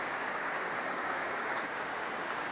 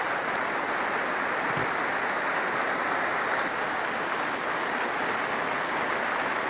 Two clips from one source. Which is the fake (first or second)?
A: first